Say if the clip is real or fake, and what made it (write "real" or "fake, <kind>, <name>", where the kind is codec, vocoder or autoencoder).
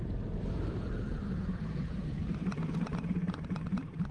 fake, vocoder, BigVGAN v2